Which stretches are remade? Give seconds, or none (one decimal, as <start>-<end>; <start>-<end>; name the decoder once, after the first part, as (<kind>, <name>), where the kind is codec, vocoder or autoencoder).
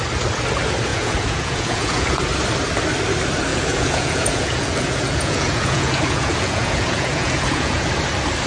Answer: 0.9-2.2 (vocoder, Vocos); 3.5-7.9